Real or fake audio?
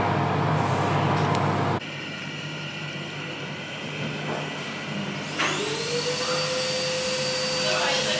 real